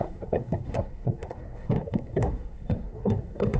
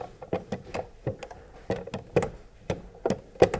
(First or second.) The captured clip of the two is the second